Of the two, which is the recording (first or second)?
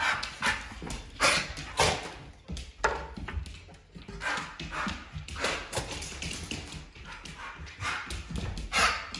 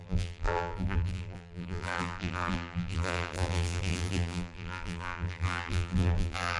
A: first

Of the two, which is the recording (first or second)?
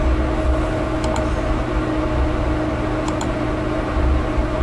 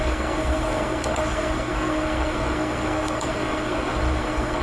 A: first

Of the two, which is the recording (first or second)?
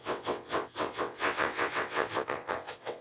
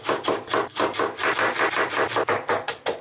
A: second